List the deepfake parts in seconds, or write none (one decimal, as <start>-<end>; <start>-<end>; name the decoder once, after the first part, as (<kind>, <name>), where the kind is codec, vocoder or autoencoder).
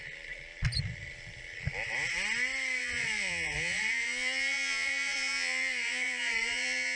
2.8-7.0 (vocoder, Vocos)